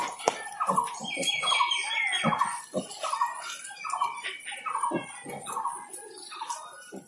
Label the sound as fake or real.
real